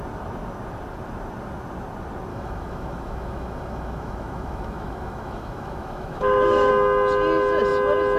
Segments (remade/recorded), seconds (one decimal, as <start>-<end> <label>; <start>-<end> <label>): 0.0-2.3 recorded; 2.3-6.7 remade; 6.7-8.2 recorded